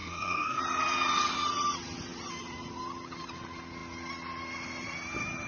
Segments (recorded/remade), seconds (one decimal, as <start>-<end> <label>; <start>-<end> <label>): 0.0-0.6 remade; 0.6-5.5 recorded

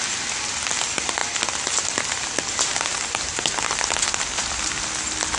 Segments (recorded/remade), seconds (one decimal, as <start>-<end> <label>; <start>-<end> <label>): 0.0-5.4 recorded

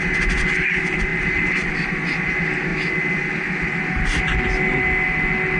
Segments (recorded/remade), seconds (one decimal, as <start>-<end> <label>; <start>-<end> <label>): 0.0-5.6 recorded

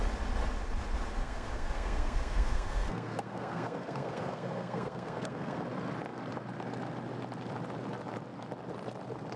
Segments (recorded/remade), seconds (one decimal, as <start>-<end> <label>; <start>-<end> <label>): 0.0-1.2 recorded; 1.2-5.6 remade; 5.6-9.4 recorded